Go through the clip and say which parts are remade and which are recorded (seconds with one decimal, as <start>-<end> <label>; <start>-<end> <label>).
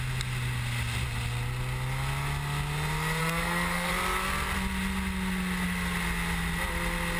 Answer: 0.0-3.2 recorded; 3.2-3.9 remade; 3.9-7.2 recorded